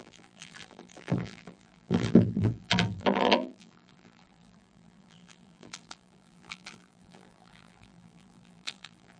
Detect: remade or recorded remade